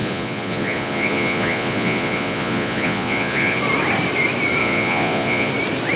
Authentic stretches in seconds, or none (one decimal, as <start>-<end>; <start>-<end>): 3.6-4.6; 5.5-6.0

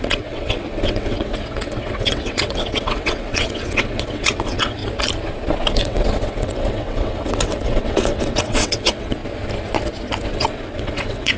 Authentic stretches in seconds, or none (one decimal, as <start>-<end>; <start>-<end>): 4.8-5.8; 9.2-10.3

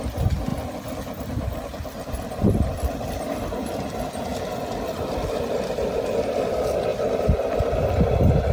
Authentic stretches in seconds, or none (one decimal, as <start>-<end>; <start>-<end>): 0.5-3.1; 4.3-5.7

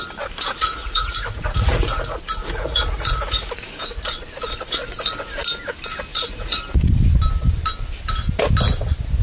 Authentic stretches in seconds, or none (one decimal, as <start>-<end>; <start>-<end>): 0.0-0.6; 5.1-6.1; 6.6-9.2

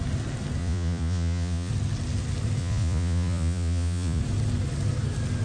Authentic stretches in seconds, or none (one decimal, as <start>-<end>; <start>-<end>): 0.0-0.6; 1.7-2.6; 4.2-5.4

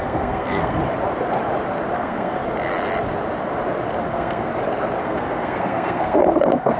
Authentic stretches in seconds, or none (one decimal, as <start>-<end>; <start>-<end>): 0.8-2.0; 2.4-4.0; 4.5-5.0